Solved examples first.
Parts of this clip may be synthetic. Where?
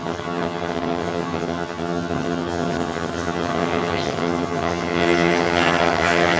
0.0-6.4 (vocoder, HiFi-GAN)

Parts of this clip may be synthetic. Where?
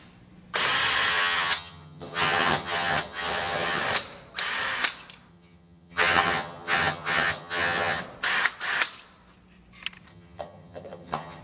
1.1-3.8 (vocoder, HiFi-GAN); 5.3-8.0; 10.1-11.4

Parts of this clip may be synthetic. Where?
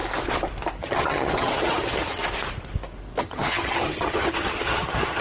0.8-2.2 (vocoder, HiFi-GAN); 3.2-5.2